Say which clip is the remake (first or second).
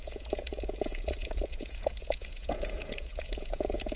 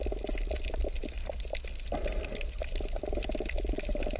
first